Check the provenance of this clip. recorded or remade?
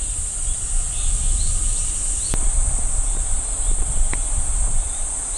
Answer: recorded